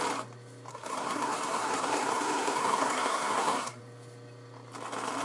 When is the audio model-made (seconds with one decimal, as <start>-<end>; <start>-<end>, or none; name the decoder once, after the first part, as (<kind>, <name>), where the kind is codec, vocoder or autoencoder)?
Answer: 0.7-3.8 (codec, SNAC)